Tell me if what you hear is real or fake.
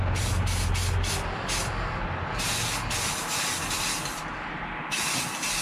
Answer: real